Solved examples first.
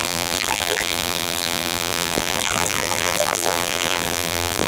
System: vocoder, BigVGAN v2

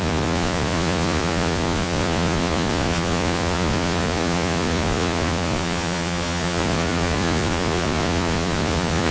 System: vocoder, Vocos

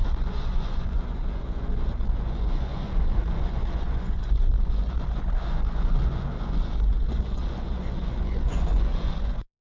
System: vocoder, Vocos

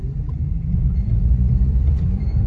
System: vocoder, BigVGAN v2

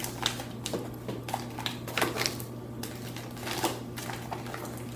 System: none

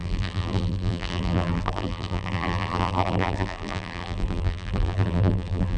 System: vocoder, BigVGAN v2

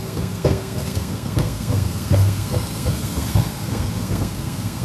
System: codec, SNAC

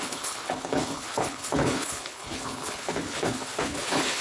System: codec, HILCodec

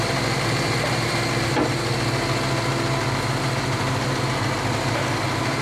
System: none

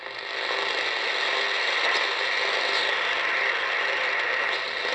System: none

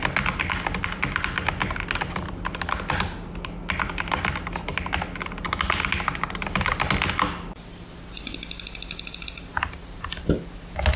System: none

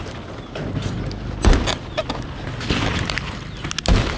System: none